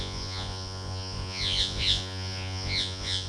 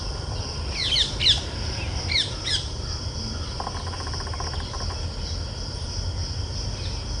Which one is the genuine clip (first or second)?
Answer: second